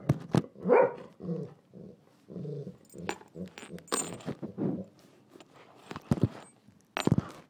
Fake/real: real